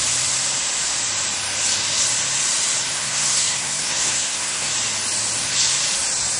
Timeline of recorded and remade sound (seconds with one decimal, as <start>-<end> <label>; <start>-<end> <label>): 0.0-2.9 recorded; 2.9-4.7 remade; 4.7-6.4 recorded